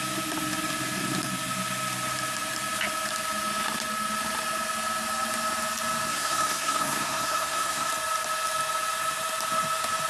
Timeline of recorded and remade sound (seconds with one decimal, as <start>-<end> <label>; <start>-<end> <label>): 0.0-6.1 recorded; 6.1-7.9 remade; 7.9-10.1 recorded